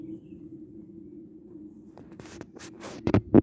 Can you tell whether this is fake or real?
fake